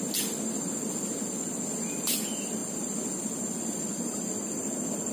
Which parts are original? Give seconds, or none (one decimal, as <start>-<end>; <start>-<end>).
0.0-5.1